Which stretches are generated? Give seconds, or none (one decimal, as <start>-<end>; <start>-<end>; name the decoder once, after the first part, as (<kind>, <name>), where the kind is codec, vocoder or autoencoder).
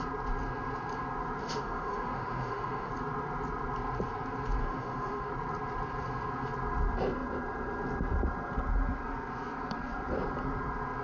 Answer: 1.4-2.9 (autoencoder, DAC-VAE); 4.6-5.3